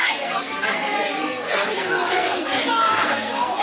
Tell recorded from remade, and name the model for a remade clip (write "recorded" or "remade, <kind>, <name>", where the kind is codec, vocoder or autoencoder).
remade, codec, SNAC